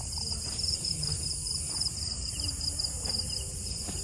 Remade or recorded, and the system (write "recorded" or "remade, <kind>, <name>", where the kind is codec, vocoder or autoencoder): remade, vocoder, BigVGAN v2